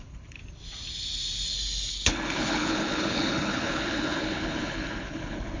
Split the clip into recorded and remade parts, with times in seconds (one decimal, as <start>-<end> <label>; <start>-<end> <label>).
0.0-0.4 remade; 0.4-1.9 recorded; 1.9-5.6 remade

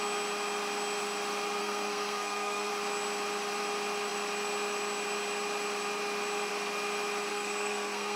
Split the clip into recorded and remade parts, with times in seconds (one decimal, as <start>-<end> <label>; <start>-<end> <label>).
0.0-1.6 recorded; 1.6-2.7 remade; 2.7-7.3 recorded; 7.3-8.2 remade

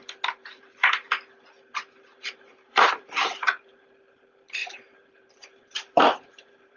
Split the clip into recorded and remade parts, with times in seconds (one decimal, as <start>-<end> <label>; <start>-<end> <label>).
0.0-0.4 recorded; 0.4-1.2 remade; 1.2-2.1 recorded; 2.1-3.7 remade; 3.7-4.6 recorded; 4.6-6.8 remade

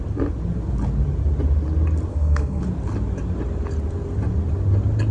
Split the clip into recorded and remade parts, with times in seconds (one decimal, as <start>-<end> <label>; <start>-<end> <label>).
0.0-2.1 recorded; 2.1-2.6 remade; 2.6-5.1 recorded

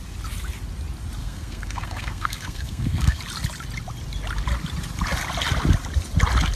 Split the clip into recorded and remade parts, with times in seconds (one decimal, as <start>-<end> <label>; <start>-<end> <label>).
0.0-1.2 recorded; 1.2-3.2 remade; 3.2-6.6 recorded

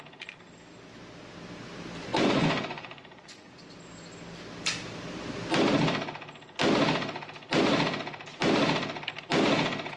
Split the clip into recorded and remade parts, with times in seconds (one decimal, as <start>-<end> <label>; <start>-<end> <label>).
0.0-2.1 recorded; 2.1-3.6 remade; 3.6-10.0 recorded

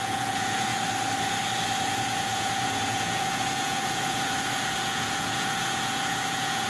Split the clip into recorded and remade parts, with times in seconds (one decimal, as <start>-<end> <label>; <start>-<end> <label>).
0.0-0.7 remade; 0.7-1.8 recorded; 1.8-6.7 remade

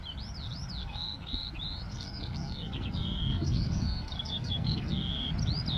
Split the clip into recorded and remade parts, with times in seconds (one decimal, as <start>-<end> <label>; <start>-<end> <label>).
0.0-0.8 recorded; 0.8-1.5 remade; 1.5-1.9 recorded; 1.9-5.3 remade; 5.3-5.8 recorded